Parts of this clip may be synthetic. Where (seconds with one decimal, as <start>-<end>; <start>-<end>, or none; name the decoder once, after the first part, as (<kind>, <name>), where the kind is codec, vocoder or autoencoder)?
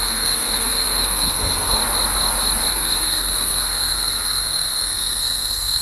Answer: 0.0-1.8 (codec, SNAC); 2.7-5.8